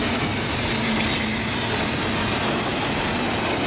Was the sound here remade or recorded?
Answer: recorded